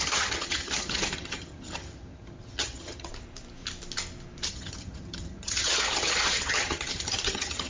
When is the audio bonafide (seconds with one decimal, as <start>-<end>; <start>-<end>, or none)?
3.1-4.5